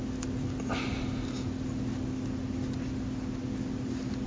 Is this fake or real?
real